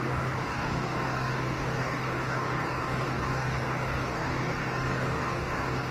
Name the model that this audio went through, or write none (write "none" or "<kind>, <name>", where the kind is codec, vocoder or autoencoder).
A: codec, DAC